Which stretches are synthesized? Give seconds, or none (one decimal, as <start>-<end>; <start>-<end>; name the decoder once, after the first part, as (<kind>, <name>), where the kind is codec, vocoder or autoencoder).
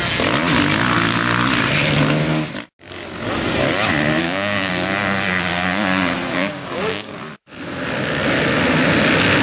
4.2-4.7 (codec, DAC); 6.3-7.1